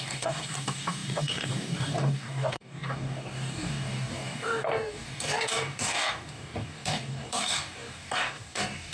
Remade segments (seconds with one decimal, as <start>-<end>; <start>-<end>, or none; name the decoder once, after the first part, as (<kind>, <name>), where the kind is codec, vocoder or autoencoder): 0.0-8.9 (codec, DAC)